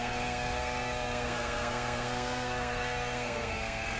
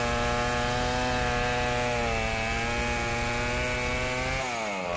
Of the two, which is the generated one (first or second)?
first